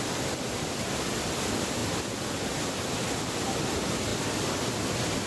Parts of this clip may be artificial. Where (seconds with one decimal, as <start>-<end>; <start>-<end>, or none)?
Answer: none